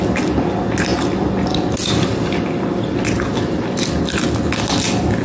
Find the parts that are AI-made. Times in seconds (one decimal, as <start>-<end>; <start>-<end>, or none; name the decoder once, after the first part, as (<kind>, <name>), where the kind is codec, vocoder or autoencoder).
none